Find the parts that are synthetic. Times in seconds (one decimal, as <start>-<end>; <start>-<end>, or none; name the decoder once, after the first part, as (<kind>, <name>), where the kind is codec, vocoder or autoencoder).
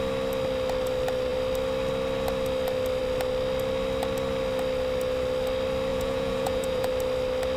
5.9-6.9 (vocoder, Vocos)